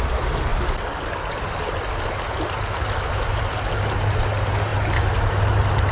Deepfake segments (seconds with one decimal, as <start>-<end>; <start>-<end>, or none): none

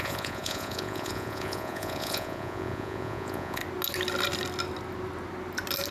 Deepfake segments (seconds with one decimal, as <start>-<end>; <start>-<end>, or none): 0.0-3.6

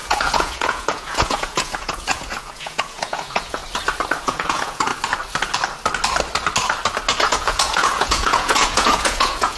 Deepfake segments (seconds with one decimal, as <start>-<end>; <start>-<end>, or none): 0.0-3.6; 4.2-4.9; 7.2-9.6

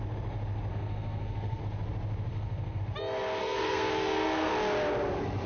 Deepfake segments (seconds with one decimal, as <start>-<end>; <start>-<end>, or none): 0.7-1.6; 2.3-2.8; 3.4-4.5